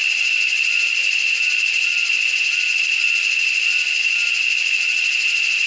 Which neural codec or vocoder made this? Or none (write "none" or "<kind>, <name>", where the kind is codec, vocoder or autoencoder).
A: none